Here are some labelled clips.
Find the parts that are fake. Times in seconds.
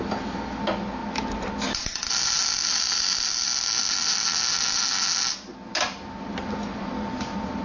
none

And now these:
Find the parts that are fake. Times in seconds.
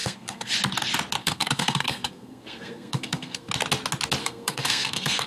0.0-0.5 (codec, SNAC); 1.2-3.5; 4.2-5.3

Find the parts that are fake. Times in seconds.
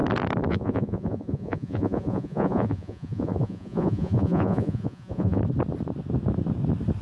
0.5-5.4 (vocoder, Vocos)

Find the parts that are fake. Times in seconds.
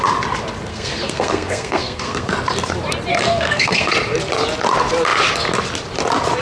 0.7-2.3 (codec, SNAC); 3.1-3.9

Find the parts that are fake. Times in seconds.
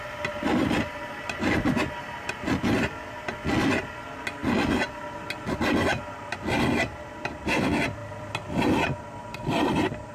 none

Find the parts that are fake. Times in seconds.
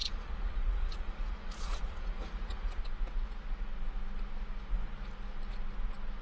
0.0-2.8 (vocoder, Vocos)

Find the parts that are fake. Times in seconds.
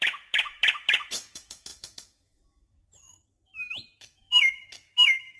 0.0-5.4 (autoencoder, DAC-VAE)